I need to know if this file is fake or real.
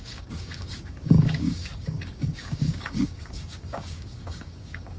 fake